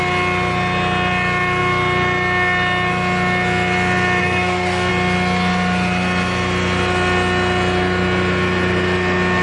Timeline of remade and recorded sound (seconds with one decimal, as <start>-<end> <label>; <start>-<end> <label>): 0.0-4.2 recorded; 4.2-4.9 remade; 4.9-9.4 recorded